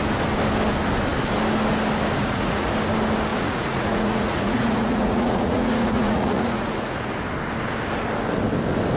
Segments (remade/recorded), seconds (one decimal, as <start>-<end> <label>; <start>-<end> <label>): 0.0-2.2 recorded; 2.2-2.7 remade; 2.7-3.3 recorded; 3.3-7.1 remade; 7.1-9.0 recorded